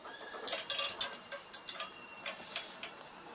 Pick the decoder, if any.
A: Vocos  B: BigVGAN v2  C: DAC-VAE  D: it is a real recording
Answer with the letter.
D